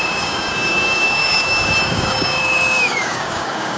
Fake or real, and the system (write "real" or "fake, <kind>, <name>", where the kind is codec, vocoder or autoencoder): fake, codec, DAC